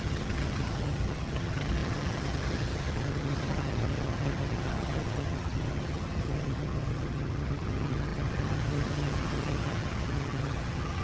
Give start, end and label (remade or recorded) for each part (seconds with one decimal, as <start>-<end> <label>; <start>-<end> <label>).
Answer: 0.0-11.0 remade